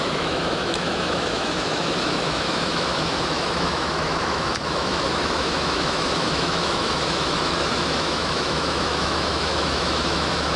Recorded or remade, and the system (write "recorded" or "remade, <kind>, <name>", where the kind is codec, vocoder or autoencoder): remade, autoencoder, DAC-VAE